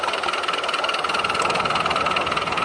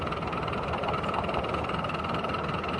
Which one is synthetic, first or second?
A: second